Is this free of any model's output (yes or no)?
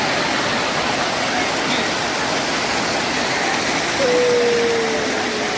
yes